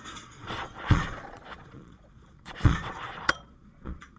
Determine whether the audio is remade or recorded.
remade